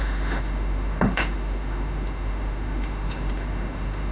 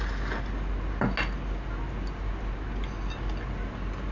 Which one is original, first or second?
second